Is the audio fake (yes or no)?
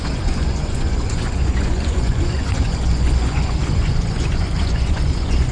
yes